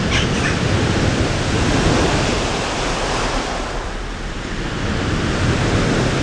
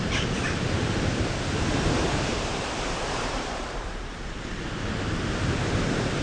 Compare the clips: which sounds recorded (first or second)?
first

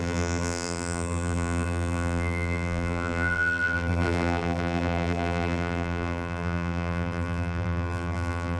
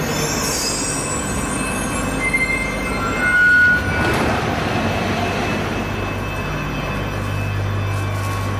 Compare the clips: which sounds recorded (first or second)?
second